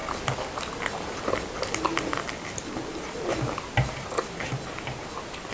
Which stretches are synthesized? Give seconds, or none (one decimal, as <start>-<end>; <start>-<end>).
none